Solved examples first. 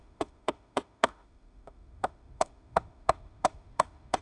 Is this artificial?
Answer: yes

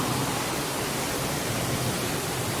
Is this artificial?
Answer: no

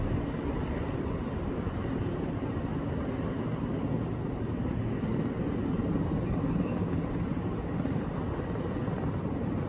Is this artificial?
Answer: no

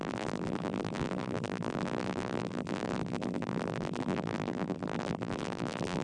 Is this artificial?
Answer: yes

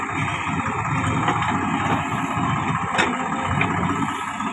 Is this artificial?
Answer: no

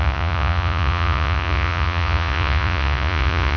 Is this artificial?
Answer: yes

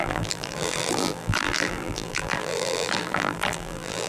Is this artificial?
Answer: yes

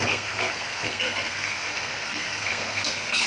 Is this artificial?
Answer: yes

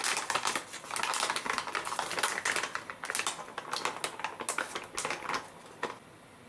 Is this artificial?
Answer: no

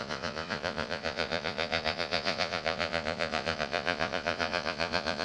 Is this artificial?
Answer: yes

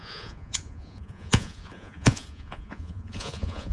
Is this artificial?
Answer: yes